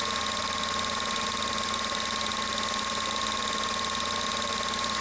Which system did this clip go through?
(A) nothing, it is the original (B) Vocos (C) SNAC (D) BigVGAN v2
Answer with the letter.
A